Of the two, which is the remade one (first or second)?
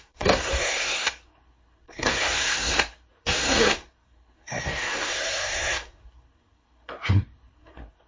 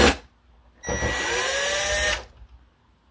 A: first